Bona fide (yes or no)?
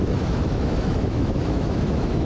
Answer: no